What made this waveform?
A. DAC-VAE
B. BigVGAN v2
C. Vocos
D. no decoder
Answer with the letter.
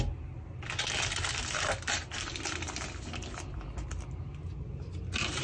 D